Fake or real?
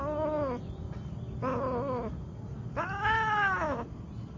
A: real